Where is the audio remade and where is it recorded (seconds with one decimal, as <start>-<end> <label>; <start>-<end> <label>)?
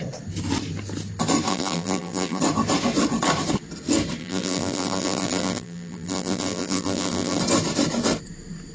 0.0-1.5 recorded; 1.5-2.4 remade; 2.4-4.2 recorded; 4.2-7.4 remade; 7.4-8.7 recorded